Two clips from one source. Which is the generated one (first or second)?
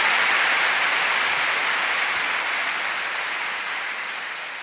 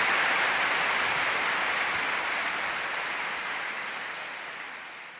second